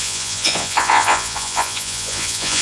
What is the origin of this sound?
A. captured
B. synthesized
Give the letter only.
B